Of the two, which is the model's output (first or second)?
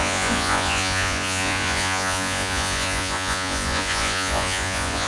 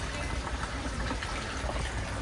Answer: first